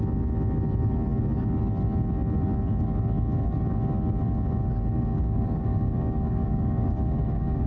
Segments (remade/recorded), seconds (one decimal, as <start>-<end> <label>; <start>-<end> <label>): 0.0-5.1 recorded; 5.1-7.7 remade